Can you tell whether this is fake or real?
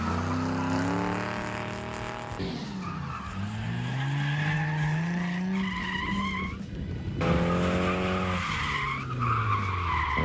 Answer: real